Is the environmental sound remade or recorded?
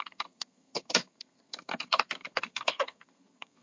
remade